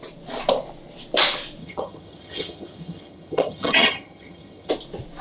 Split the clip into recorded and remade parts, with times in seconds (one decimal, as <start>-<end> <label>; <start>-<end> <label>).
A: 0.0-1.6 recorded; 1.6-4.7 remade; 4.7-5.2 recorded